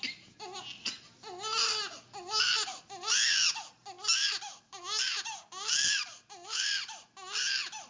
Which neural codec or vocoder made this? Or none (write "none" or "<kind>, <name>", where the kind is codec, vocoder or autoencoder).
none